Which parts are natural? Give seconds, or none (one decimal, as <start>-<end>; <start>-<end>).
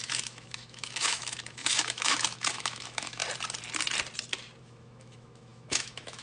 3.2-4.6